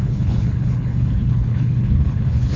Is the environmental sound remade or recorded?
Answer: remade